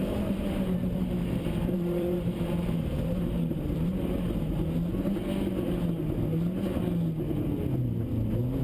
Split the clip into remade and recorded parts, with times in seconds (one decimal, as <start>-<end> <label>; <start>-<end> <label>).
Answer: 0.0-4.6 remade; 4.6-8.6 recorded